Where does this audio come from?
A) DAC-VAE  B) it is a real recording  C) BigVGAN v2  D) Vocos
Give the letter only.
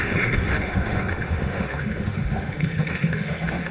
A